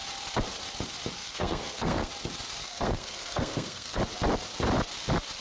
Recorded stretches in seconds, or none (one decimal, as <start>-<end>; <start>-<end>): 0.0-1.2; 2.1-2.6; 4.0-5.4

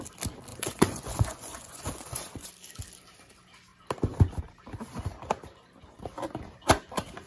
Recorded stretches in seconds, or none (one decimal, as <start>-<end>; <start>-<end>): 0.0-0.5; 2.5-7.3

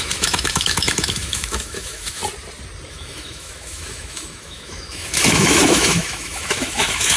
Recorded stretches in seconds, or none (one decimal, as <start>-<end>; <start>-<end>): 2.2-2.9

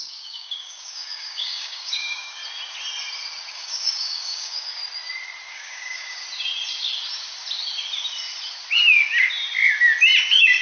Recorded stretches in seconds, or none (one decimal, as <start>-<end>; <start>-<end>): 2.4-3.5; 4.8-5.5; 6.2-10.6

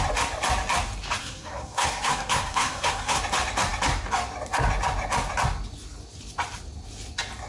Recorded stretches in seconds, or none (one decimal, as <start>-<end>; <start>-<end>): 0.0-1.2; 3.2-7.5

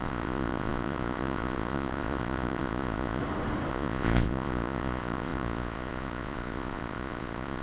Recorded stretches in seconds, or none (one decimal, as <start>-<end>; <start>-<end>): 3.2-3.7